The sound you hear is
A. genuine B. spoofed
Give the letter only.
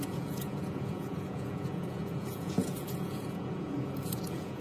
B